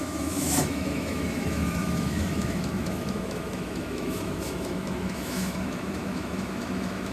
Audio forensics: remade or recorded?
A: remade